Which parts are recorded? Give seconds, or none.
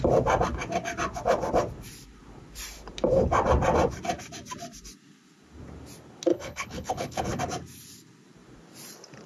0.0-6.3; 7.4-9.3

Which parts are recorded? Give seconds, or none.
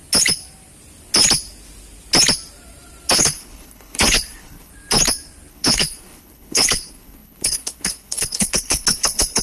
0.0-3.1; 4.7-5.5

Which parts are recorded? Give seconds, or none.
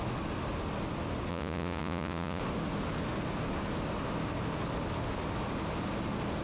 0.0-1.3; 2.4-6.4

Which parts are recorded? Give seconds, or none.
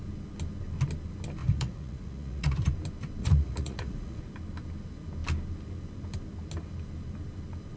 0.0-1.4; 2.7-3.2; 4.2-7.8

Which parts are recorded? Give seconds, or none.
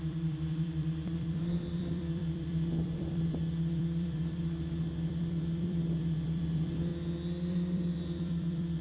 6.9-7.5